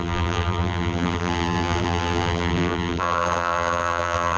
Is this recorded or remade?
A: remade